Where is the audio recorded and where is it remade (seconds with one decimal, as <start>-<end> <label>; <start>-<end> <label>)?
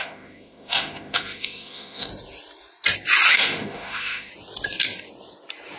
0.0-2.1 remade; 2.1-3.3 recorded; 3.3-4.3 remade; 4.3-5.8 recorded